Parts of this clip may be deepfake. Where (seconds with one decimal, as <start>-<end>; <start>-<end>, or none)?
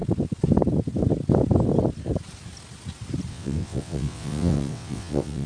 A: 3.3-5.5